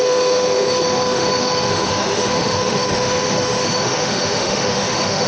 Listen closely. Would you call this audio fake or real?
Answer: fake